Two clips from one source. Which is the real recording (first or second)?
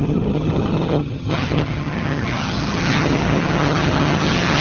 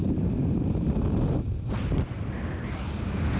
second